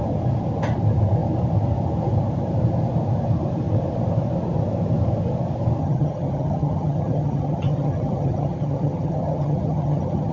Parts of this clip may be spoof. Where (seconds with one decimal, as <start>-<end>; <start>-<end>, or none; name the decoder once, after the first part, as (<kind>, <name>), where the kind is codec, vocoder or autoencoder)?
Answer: 5.8-10.3 (vocoder, HiFi-GAN)